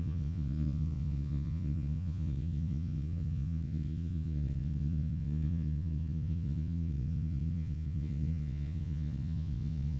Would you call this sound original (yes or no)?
no